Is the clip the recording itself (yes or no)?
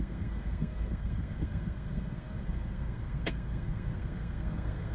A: no